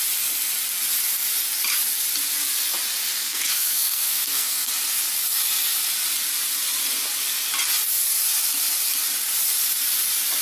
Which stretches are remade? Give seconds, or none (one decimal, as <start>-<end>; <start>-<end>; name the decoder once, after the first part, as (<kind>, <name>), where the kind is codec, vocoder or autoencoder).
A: 3.2-4.7 (codec, SNAC)